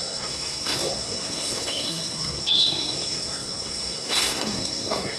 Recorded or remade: remade